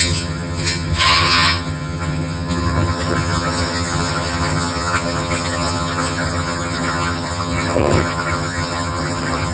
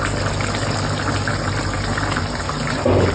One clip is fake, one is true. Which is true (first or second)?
second